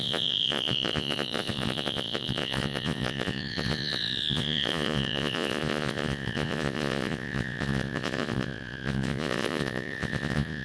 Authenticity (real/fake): fake